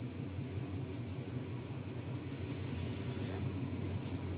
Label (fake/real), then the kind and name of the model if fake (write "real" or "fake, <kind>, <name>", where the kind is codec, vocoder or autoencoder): fake, vocoder, Vocos